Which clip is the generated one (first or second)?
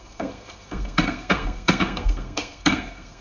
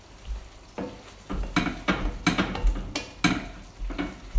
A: first